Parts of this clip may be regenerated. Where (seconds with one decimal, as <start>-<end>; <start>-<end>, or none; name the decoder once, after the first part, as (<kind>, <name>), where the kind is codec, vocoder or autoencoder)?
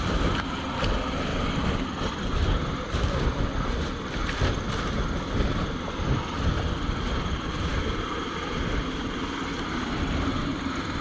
none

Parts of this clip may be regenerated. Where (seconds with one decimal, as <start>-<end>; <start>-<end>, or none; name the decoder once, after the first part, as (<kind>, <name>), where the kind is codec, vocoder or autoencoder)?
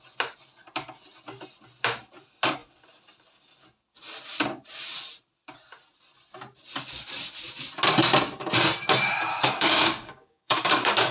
9.3-11.1 (codec, DAC)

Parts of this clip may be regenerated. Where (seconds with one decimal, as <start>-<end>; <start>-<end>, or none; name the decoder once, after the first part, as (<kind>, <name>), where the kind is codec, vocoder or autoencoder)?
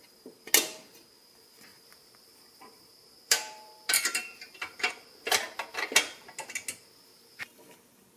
1.7-4.9 (vocoder, BigVGAN v2)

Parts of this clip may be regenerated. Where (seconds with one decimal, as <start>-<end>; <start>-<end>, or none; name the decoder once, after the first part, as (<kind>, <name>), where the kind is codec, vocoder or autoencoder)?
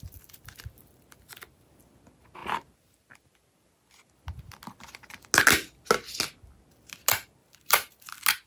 7.4-8.0 (vocoder, BigVGAN v2)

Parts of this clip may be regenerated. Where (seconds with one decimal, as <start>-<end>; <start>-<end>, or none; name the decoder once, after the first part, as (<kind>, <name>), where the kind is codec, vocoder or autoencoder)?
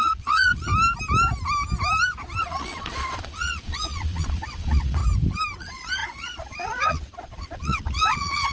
0.0-0.7 (vocoder, Vocos); 2.4-5.0; 5.6-8.5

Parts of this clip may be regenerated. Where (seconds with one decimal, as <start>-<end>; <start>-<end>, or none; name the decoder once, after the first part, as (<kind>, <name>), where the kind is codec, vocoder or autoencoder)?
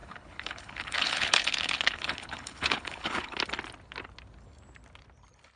0.0-3.4 (codec, HILCodec)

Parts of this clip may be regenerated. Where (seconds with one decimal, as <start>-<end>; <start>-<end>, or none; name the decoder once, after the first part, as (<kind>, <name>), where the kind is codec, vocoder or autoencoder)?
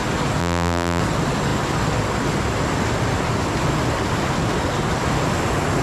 0.4-1.0 (vocoder, BigVGAN v2)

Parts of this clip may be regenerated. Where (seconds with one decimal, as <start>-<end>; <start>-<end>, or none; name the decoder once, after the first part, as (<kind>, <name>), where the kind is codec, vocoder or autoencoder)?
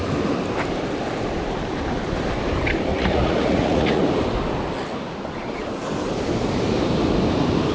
2.9-4.0 (vocoder, Vocos)